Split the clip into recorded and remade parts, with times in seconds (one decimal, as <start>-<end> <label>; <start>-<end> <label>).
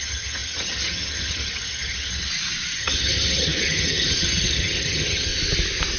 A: 0.0-2.3 remade; 2.3-2.8 recorded; 2.8-5.3 remade; 5.3-6.0 recorded